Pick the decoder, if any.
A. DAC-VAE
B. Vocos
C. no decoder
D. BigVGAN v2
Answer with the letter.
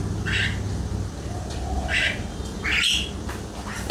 C